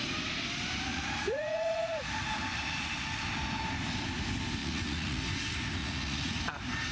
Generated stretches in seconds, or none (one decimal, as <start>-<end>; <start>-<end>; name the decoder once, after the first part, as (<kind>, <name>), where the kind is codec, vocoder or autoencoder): 0.9-2.4 (vocoder, Vocos); 4.6-5.2; 5.8-6.4